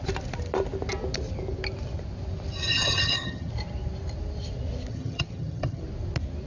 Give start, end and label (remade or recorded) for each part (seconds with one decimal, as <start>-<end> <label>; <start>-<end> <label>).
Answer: 0.0-2.7 recorded; 2.7-3.5 remade; 3.5-4.9 recorded; 4.9-5.8 remade; 5.8-6.5 recorded